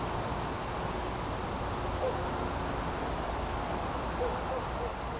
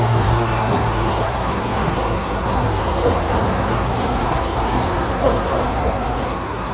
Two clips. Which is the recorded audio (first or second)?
first